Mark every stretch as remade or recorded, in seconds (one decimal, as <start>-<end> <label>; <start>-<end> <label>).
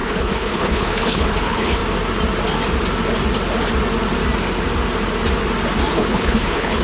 0.0-1.8 remade; 1.8-5.9 recorded; 5.9-6.8 remade